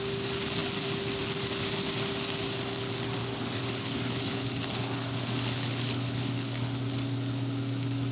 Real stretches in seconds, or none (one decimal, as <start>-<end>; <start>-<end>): 0.0-3.2; 6.8-8.1